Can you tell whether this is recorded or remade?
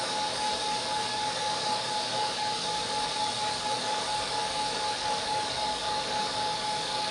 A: remade